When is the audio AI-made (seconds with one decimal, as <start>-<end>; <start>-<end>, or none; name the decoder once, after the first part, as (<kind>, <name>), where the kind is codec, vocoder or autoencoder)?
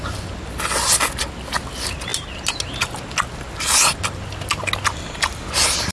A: none